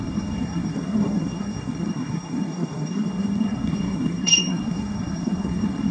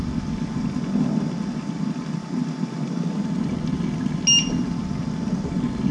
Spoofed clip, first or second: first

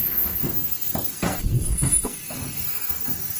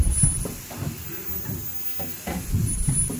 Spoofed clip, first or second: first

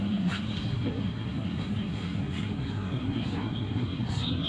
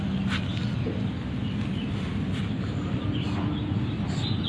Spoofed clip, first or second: first